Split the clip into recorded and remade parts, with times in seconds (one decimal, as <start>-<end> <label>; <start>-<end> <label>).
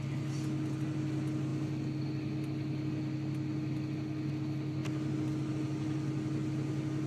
0.0-7.1 recorded